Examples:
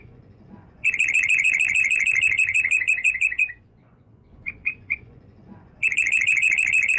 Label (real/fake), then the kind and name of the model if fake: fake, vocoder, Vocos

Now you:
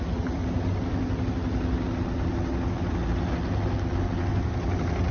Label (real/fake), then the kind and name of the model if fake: real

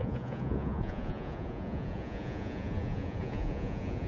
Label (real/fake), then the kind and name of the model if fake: fake, vocoder, Vocos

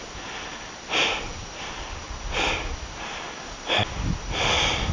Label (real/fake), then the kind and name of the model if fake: real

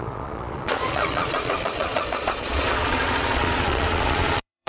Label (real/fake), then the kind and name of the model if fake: fake, vocoder, Vocos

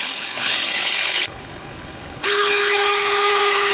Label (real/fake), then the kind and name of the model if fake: fake, codec, HILCodec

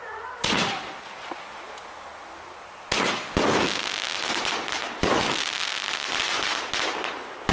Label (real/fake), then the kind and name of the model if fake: real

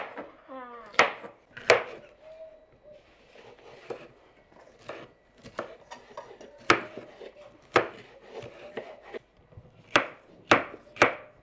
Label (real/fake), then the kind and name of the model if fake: real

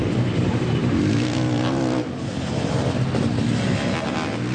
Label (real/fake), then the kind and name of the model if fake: real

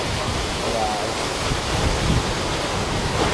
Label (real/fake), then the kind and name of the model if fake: real